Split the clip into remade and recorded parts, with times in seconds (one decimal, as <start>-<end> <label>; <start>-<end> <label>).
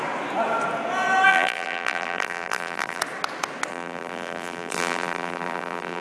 0.0-1.3 recorded; 1.3-3.0 remade; 3.0-3.7 recorded; 3.7-6.0 remade